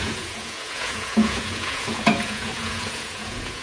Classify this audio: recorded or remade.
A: remade